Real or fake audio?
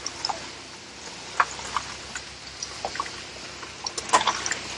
real